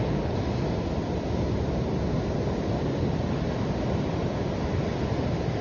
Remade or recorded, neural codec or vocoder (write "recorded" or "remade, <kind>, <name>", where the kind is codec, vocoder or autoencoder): recorded